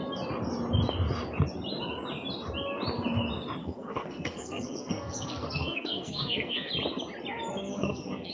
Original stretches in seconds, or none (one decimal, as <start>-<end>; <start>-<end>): 0.0-3.6; 6.7-7.6